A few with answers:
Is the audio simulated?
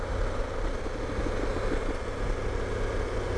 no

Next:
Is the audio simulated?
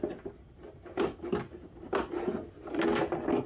no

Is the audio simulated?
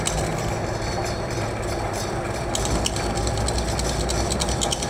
no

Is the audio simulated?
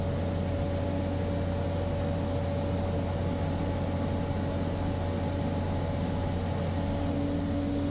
no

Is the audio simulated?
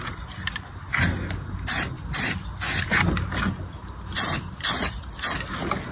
no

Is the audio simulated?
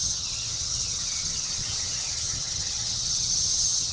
yes